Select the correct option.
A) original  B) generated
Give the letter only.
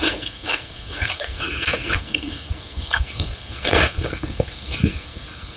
B